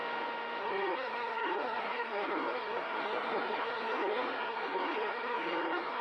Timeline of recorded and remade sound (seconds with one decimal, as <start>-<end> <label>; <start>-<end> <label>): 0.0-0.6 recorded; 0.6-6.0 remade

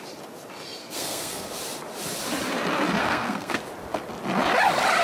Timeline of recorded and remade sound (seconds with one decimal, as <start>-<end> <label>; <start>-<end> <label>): 0.0-0.8 recorded; 0.8-1.5 remade; 1.5-3.0 recorded; 3.0-3.6 remade; 3.6-5.0 recorded

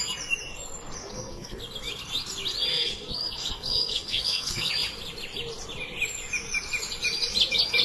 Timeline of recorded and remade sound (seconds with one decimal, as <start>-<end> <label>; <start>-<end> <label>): 0.0-1.0 recorded; 1.0-1.6 remade; 1.6-2.7 recorded; 2.7-4.7 remade; 4.7-7.8 recorded

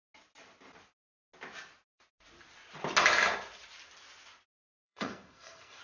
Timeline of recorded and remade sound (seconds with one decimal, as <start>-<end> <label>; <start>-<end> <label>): 0.0-4.7 recorded; 4.7-5.8 remade